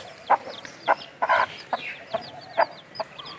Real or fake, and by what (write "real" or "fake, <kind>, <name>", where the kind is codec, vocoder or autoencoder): fake, vocoder, BigVGAN v2